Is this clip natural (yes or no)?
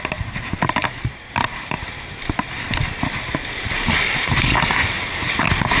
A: yes